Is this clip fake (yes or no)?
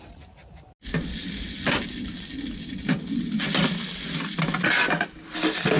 no